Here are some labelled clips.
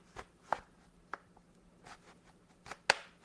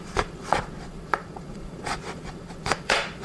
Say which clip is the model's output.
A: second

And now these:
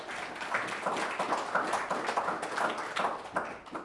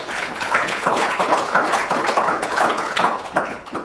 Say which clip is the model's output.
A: second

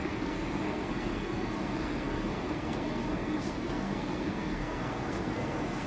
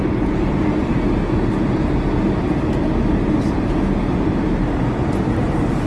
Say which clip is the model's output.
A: first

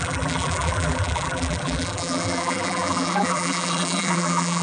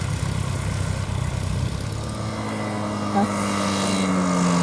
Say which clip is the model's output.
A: first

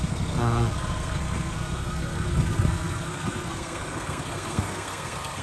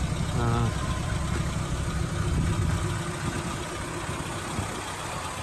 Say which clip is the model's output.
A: first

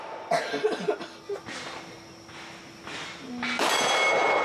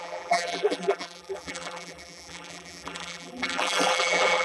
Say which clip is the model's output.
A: second